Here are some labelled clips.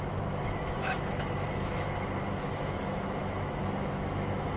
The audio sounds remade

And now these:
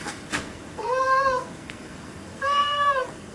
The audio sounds remade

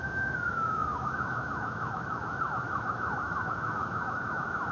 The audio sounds remade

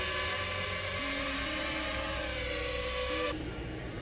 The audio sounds remade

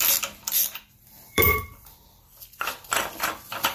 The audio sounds remade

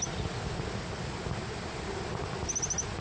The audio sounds recorded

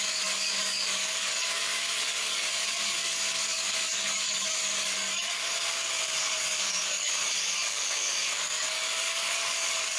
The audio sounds remade